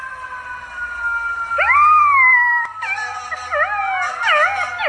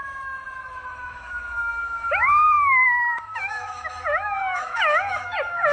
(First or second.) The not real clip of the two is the second